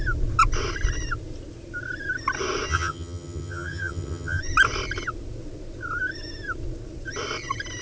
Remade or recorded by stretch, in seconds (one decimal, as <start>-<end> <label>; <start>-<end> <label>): 0.0-2.7 recorded; 2.7-4.4 remade; 4.4-7.8 recorded